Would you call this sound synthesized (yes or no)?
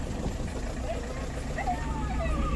no